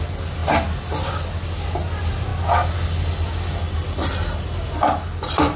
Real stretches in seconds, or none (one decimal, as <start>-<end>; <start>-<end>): 0.0-5.6